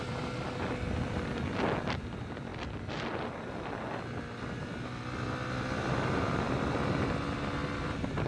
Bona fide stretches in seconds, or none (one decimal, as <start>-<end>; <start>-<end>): 0.0-8.3